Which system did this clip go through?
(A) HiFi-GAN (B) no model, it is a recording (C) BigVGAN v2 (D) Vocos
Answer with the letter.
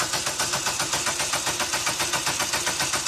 B